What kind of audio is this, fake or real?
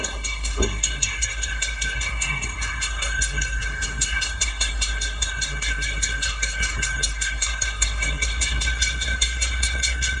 fake